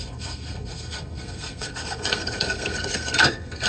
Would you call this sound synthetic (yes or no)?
yes